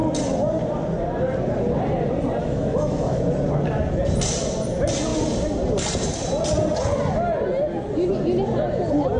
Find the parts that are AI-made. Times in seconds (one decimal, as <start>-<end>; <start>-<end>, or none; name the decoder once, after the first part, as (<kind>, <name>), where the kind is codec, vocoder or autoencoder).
2.4-3.2 (autoencoder, DAC-VAE)